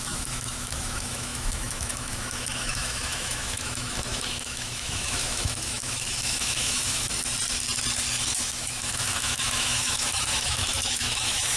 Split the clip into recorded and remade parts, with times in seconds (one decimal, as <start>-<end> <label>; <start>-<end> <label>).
0.0-7.1 remade; 7.1-8.4 recorded; 8.4-11.6 remade